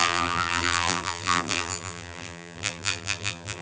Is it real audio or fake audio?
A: fake